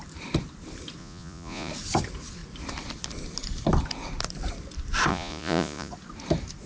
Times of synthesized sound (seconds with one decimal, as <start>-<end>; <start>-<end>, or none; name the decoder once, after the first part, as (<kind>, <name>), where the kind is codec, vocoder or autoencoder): 1.0-1.7 (vocoder, Vocos); 5.1-5.9